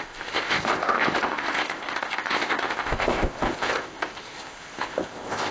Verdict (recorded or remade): remade